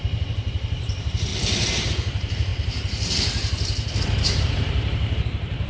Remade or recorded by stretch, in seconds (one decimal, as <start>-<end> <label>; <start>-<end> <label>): 0.0-1.3 remade; 1.3-1.9 recorded; 1.9-2.5 remade; 2.5-4.4 recorded; 4.4-5.7 remade